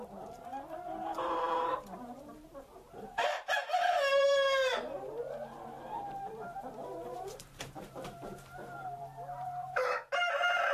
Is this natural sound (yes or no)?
no